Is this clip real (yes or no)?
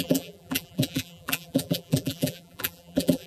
no